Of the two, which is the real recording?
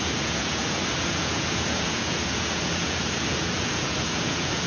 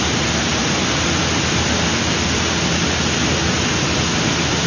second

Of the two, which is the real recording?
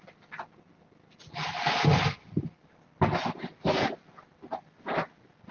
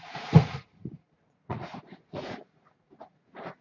first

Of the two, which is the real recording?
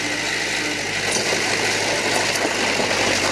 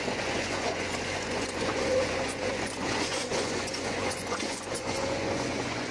first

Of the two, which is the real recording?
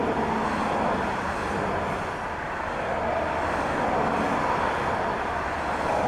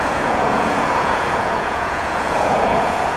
first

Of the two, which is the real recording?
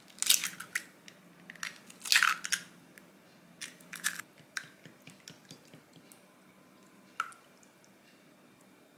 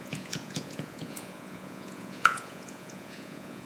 first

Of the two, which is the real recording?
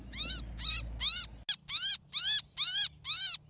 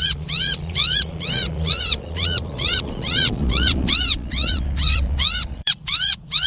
first